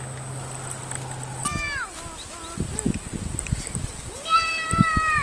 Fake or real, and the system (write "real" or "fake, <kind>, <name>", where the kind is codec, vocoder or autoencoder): real